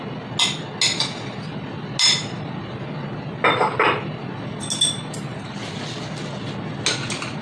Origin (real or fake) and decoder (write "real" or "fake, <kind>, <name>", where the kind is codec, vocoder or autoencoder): real